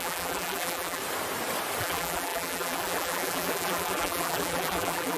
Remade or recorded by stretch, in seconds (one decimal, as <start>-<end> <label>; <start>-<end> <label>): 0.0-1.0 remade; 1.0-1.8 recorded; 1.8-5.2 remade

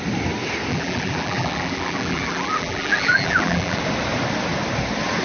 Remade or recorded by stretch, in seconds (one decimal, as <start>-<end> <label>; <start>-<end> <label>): 0.0-0.7 recorded; 0.7-3.8 remade; 3.8-5.2 recorded

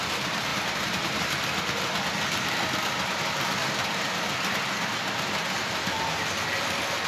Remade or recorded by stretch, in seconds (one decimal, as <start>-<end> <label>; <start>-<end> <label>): 0.0-0.5 recorded; 0.5-1.3 remade; 1.3-3.6 recorded; 3.6-4.1 remade; 4.1-7.1 recorded